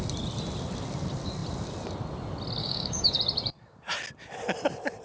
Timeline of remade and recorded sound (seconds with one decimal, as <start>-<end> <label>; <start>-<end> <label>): 0.0-2.6 recorded; 2.6-3.2 remade; 3.2-5.0 recorded